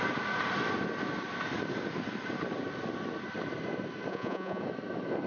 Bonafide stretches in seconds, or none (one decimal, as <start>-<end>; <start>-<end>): 0.0-4.1; 4.6-5.3

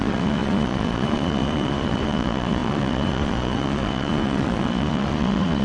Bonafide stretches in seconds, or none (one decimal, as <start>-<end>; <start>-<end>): none

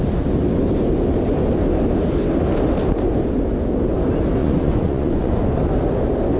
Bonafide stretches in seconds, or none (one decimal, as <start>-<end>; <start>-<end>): 0.0-4.4; 5.6-6.4

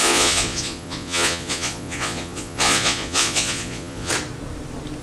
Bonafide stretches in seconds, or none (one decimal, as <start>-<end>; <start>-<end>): 4.1-5.0